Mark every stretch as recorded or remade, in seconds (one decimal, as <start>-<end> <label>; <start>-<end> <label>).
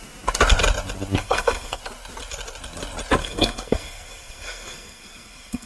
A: 0.0-1.2 recorded; 1.2-1.8 remade; 1.8-3.2 recorded; 3.2-5.7 remade